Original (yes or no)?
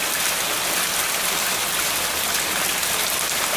yes